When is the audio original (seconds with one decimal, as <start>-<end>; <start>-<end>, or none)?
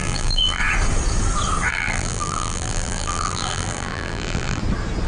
0.6-1.7; 4.6-5.1